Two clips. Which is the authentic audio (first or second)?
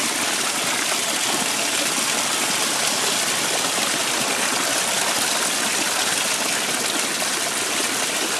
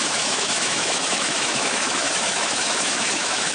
first